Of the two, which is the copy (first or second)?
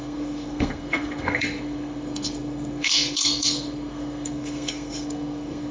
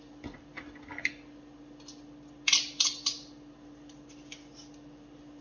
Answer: first